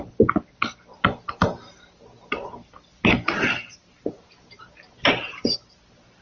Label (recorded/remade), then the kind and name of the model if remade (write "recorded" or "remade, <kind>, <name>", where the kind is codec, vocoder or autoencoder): recorded